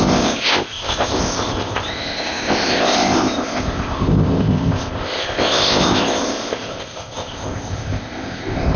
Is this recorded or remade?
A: remade